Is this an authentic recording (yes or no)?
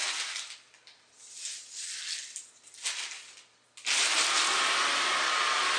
yes